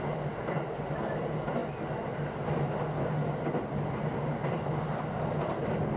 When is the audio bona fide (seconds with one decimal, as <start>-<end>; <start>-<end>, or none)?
0.0-6.0